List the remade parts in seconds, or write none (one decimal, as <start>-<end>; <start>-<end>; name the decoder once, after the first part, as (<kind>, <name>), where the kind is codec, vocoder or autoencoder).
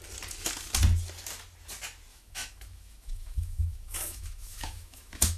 2.1-5.4 (autoencoder, DAC-VAE)